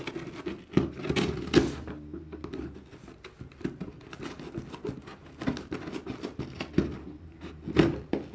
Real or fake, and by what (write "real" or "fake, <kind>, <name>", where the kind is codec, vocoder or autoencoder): real